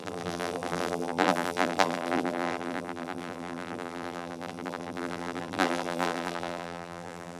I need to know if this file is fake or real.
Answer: fake